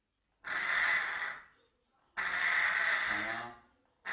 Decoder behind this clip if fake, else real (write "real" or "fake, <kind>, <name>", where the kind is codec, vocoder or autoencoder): real